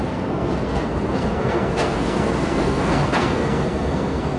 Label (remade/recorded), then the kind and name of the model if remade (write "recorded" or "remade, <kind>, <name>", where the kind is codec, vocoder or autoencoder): remade, codec, SNAC